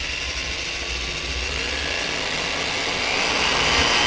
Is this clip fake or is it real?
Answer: real